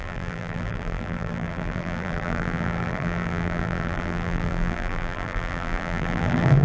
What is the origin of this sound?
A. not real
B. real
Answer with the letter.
A